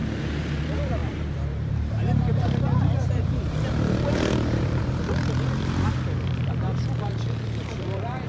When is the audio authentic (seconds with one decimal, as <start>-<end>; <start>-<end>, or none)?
0.0-0.6